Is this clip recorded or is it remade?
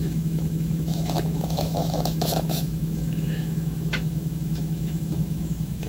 remade